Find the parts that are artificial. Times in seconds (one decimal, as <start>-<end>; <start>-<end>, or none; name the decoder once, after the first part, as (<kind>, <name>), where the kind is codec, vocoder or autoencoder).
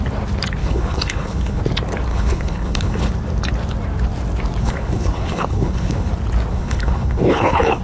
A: 0.6-1.6 (codec, HILCodec); 2.1-3.1; 4.6-6.1; 6.5-7.8